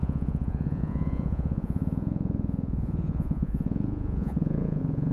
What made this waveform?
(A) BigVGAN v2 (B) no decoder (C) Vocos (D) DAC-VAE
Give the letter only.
C